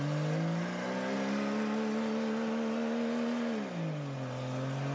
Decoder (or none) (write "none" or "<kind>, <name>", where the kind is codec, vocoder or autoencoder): none